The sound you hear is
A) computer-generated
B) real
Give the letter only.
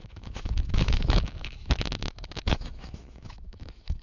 A